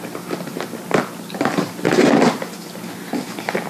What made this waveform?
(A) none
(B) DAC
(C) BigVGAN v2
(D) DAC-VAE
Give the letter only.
A